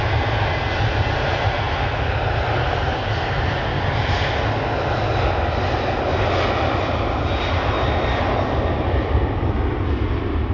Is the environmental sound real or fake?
real